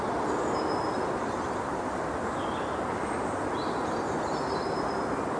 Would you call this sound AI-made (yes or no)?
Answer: no